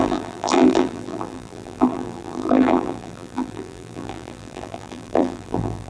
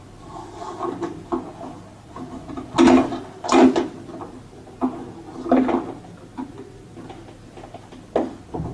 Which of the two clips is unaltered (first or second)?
second